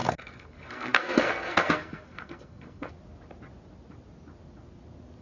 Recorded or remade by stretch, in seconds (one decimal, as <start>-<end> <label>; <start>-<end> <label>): 0.0-2.9 remade; 2.9-5.2 recorded